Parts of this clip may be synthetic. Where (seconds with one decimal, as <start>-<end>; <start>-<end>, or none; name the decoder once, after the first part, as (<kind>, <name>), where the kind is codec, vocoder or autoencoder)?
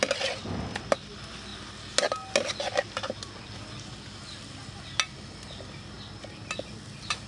none